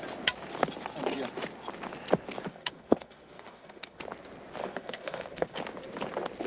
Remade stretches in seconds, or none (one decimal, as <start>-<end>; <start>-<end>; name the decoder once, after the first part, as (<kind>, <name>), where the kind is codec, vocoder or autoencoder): 2.5-4.0 (codec, SNAC); 4.6-5.6